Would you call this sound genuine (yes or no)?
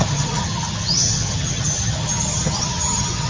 no